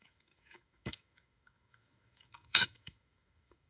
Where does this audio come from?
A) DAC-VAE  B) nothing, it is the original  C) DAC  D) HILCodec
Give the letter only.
A